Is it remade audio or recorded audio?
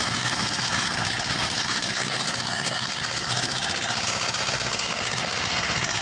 remade